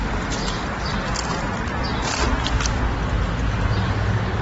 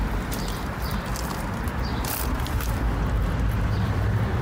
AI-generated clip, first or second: second